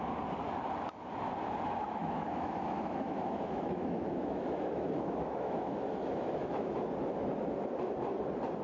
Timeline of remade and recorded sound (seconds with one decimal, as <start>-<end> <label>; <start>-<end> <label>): 0.0-2.0 recorded; 2.0-6.7 remade; 6.7-8.6 recorded